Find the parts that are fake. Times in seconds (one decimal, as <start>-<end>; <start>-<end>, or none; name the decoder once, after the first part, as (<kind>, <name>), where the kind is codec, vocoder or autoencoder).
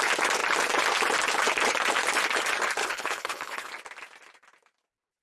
2.8-3.7 (codec, HILCodec)